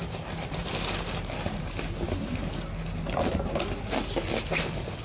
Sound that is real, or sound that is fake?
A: real